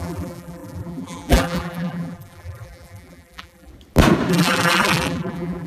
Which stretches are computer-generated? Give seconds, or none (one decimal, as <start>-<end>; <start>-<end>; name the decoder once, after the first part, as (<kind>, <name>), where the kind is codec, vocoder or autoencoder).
0.0-3.7 (vocoder, BigVGAN v2); 4.3-5.7